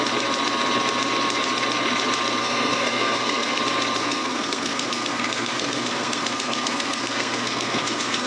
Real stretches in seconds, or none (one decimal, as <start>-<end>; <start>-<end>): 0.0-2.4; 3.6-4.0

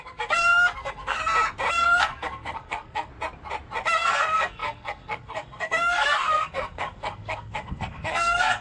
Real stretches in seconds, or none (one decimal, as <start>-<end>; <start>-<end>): 1.2-1.7; 3.1-3.9

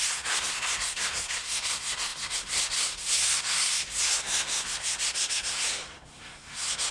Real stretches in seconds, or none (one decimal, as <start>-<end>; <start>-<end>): none

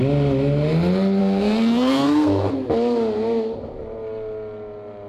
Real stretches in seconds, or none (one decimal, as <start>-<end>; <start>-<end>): 0.0-1.2; 2.5-5.1

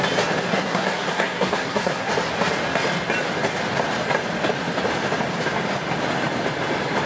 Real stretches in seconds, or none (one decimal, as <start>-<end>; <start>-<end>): 0.0-0.5; 2.1-7.1

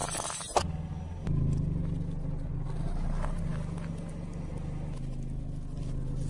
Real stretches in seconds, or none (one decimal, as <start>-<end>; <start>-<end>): 0.0-6.3

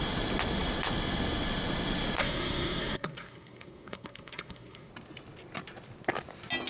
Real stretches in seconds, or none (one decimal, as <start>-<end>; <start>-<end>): 0.0-2.2; 4.9-6.7

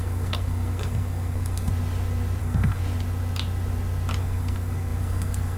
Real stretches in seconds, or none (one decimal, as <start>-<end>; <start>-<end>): 1.7-2.4; 2.8-4.2